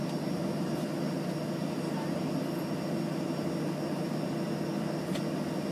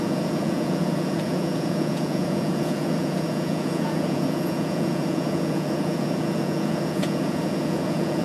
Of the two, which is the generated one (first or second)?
second